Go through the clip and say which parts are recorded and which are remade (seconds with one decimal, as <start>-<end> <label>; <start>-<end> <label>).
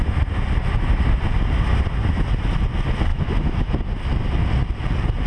0.0-3.1 recorded; 3.1-3.7 remade; 3.7-5.3 recorded